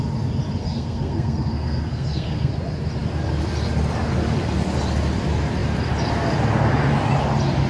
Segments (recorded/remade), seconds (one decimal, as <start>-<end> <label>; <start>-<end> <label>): 0.0-0.6 recorded; 0.6-2.5 remade; 2.5-7.7 recorded